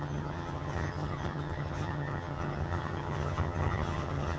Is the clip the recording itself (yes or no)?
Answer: no